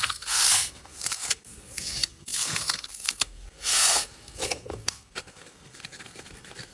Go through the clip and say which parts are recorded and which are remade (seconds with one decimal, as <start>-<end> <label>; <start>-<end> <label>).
0.0-6.7 remade